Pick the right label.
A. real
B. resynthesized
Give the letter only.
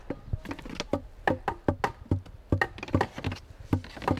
A